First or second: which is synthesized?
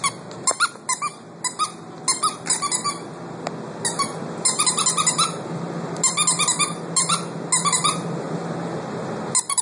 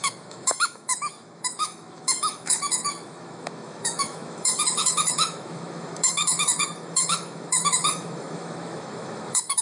second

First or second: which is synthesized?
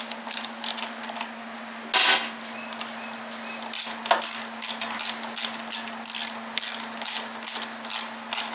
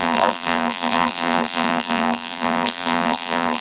second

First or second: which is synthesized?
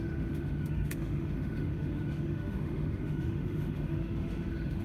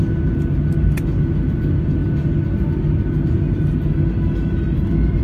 first